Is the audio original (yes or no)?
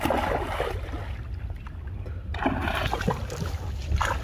yes